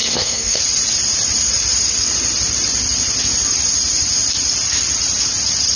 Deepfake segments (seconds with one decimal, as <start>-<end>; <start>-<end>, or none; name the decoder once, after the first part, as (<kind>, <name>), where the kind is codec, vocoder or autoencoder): 0.0-0.6 (codec, SNAC)